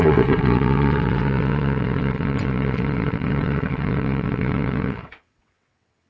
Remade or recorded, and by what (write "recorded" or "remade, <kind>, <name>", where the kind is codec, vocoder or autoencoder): remade, vocoder, WaveNeXt